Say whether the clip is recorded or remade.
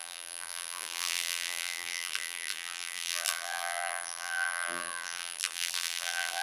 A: remade